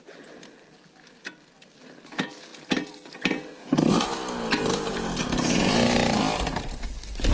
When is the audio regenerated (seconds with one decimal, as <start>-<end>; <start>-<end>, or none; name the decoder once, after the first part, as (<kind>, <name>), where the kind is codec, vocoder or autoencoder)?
none